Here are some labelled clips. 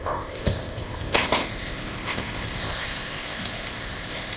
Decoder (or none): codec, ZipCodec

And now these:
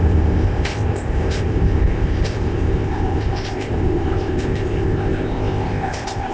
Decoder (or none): codec, ZipCodec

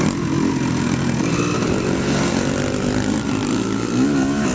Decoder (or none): none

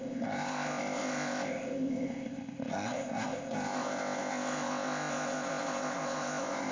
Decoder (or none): codec, ZipCodec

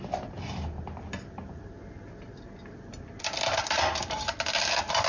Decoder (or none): none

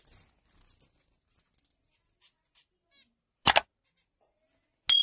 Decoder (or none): none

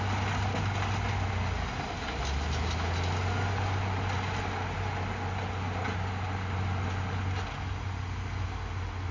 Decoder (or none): none